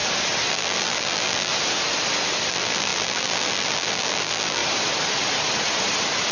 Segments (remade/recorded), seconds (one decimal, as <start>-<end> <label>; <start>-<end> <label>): 0.0-0.5 recorded; 0.5-1.5 remade; 1.5-2.5 recorded; 2.5-4.6 remade; 4.6-6.3 recorded